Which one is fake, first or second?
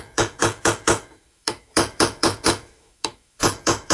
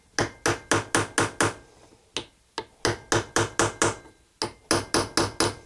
first